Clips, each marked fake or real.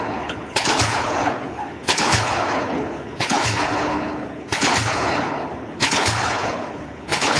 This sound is fake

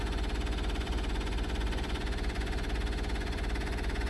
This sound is fake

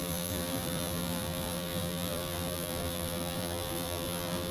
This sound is fake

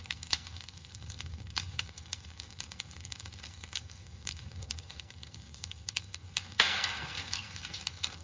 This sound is fake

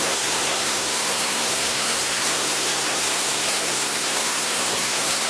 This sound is fake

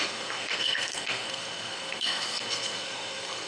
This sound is fake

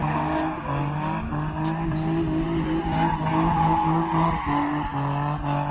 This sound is real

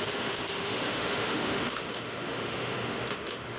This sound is fake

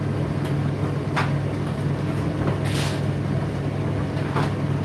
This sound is real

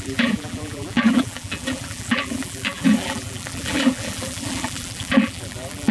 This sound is fake